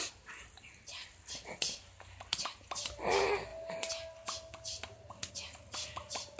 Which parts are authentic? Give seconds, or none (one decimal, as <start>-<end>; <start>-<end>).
0.0-6.4